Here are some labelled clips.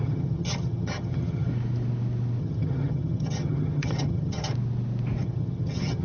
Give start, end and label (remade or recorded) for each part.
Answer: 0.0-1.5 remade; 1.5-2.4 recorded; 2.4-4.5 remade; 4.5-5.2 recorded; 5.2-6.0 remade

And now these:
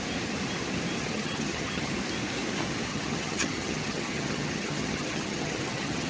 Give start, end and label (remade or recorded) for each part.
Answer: 0.0-1.0 recorded; 1.0-1.9 remade; 1.9-2.9 recorded; 2.9-6.1 remade

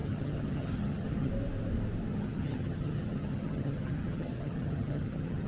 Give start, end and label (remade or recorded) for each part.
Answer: 0.0-1.3 remade; 1.3-2.1 recorded; 2.1-5.5 remade

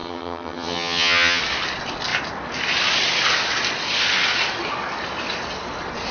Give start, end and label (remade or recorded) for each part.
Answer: 0.0-1.4 remade; 1.4-6.1 recorded